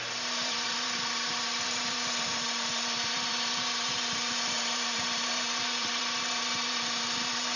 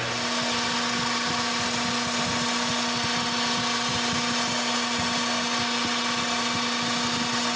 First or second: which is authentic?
second